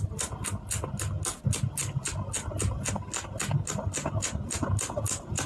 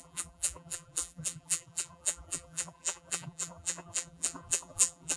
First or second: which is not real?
second